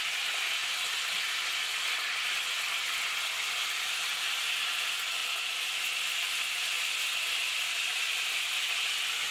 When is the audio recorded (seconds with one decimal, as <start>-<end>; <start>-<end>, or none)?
0.0-9.3